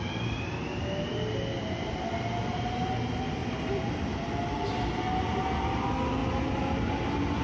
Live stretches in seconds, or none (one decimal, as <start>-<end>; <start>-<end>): 0.0-3.4; 4.3-7.4